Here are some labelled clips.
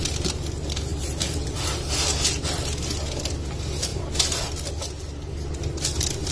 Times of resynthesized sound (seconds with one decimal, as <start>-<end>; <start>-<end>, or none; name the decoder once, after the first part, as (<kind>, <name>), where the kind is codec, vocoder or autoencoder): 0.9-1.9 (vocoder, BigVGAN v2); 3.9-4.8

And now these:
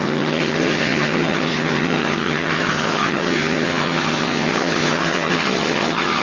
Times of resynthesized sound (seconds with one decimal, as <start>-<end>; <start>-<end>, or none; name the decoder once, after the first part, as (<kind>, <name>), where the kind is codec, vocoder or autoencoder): 0.0-6.2 (vocoder, HiFi-GAN)

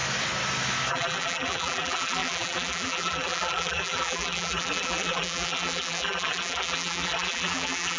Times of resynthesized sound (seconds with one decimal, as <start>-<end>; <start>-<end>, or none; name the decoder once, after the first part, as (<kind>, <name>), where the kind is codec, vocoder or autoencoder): 0.9-8.0 (vocoder, BigVGAN v2)